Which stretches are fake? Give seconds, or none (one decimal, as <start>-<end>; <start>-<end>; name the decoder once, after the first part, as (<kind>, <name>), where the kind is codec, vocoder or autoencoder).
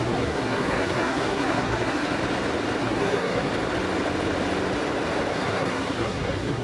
0.0-2.2 (codec, SNAC); 2.8-3.5; 5.3-6.6